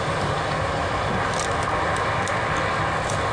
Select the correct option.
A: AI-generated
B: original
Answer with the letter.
B